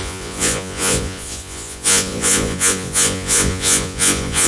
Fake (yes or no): yes